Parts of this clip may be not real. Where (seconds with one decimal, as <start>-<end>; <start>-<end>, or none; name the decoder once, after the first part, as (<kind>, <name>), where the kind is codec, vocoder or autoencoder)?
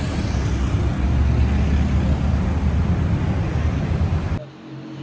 none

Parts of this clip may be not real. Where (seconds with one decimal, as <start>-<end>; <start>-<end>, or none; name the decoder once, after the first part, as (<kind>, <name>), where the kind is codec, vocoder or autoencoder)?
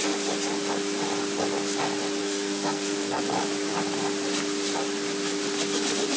2.2-3.2 (codec, SNAC)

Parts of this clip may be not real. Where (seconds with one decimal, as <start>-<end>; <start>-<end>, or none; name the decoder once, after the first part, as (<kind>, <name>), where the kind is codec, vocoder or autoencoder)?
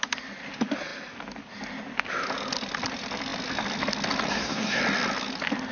4.3-4.8 (codec, SNAC)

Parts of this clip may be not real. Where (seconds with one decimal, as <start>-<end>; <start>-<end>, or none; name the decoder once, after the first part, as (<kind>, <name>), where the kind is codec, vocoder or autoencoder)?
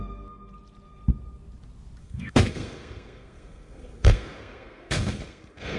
2.0-5.8 (codec, SNAC)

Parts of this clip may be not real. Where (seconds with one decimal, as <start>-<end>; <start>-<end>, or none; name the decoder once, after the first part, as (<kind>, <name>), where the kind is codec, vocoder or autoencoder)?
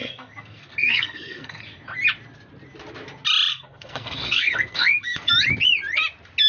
0.0-1.6 (codec, SNAC); 3.5-5.3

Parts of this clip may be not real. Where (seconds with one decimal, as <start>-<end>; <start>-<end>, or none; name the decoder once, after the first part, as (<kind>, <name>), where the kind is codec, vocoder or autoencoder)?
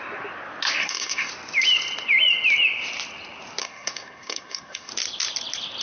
0.8-1.3 (codec, SNAC); 3.6-4.9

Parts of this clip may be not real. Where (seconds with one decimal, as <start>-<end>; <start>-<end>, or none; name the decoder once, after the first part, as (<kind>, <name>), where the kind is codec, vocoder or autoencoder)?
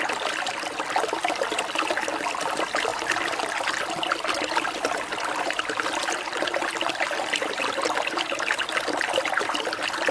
none